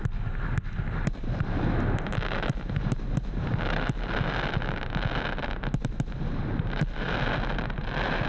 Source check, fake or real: real